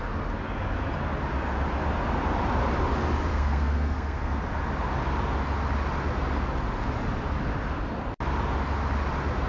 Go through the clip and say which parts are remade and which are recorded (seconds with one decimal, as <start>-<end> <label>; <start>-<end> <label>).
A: 0.0-3.3 recorded; 3.3-4.4 remade; 4.4-9.5 recorded